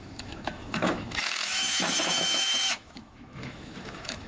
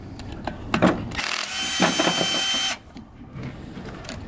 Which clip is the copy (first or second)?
first